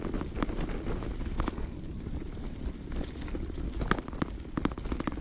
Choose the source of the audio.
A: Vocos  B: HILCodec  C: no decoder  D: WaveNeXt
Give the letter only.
C